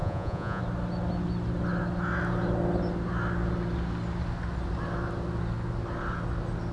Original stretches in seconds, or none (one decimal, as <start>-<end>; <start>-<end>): 0.6-6.7